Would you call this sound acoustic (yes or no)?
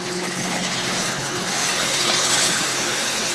no